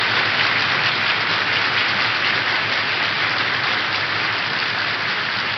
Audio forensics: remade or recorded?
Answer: recorded